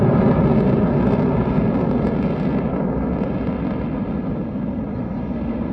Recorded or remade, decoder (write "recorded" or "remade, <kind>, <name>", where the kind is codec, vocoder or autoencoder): recorded